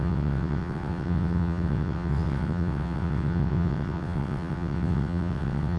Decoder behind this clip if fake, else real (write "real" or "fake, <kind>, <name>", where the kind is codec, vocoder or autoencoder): fake, vocoder, WaveNeXt